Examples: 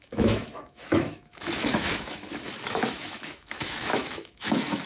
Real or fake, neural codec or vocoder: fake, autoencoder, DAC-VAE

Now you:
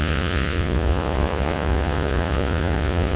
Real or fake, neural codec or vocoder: fake, vocoder, Vocos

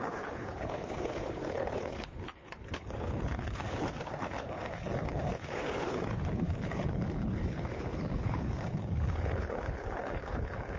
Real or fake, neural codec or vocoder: fake, codec, HILCodec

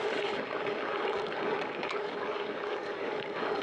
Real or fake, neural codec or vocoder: fake, codec, DAC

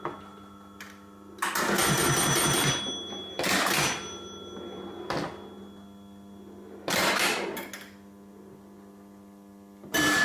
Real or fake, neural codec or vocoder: real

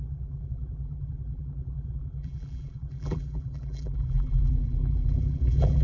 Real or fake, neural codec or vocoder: fake, vocoder, BigVGAN v2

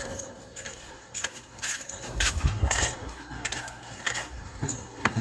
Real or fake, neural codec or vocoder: fake, codec, SNAC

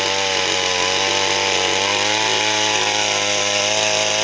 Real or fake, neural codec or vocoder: real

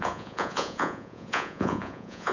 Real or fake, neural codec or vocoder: fake, vocoder, Vocos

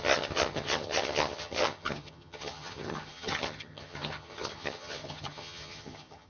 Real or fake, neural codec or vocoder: fake, vocoder, HiFi-GAN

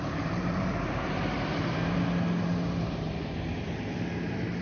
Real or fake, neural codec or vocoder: fake, vocoder, BigVGAN v2